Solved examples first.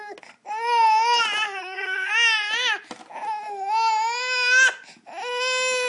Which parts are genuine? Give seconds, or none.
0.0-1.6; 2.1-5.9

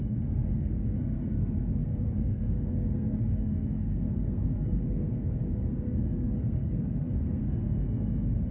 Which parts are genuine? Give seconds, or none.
none

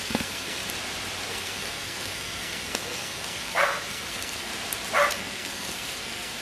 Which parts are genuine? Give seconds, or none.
0.6-1.3; 4.5-5.1

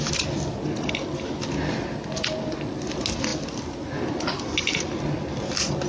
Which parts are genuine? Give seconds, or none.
0.0-5.9

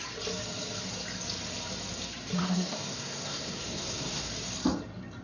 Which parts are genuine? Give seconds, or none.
0.0-2.4; 4.3-5.2

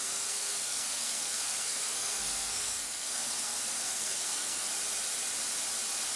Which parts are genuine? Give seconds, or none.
4.7-6.2

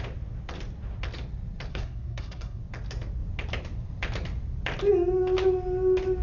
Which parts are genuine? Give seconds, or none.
0.0-1.7; 2.6-6.2